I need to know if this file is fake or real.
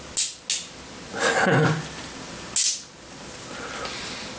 real